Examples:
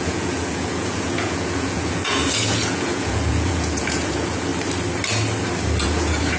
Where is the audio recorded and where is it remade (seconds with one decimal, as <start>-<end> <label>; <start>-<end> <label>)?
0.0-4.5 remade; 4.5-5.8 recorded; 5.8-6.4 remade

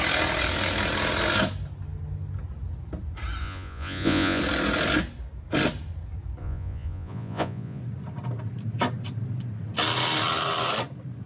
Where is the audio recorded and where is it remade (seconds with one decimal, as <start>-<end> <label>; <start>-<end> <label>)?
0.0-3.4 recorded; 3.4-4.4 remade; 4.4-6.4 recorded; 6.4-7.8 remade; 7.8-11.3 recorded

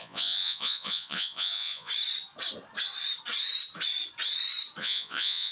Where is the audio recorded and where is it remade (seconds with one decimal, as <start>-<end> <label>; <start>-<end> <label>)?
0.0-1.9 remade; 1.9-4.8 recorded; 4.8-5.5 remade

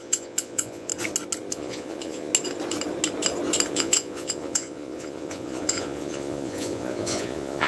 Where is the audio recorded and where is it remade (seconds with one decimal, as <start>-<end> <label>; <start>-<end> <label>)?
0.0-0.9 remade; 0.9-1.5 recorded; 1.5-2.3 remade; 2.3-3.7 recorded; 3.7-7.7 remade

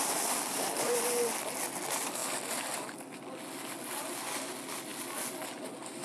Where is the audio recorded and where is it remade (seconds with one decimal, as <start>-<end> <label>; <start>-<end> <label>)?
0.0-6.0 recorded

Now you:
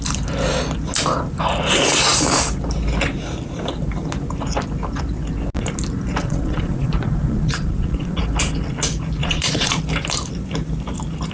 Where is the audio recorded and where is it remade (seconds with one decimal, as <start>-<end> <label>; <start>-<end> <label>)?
0.0-6.2 recorded; 6.2-8.2 remade; 8.2-9.2 recorded; 9.2-9.8 remade; 9.8-11.3 recorded

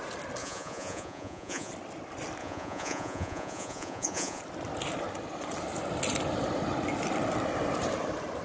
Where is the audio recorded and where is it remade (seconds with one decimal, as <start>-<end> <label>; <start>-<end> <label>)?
0.0-0.4 recorded; 0.4-1.7 remade; 1.7-2.4 recorded; 2.4-4.4 remade; 4.4-8.4 recorded

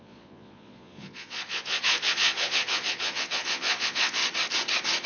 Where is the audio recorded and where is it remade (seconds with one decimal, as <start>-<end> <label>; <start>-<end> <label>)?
0.0-4.2 remade; 4.2-5.1 recorded